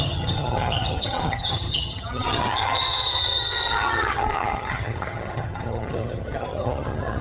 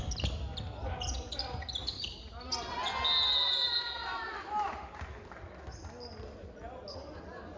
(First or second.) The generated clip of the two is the first